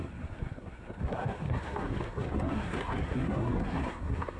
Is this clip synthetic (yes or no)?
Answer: yes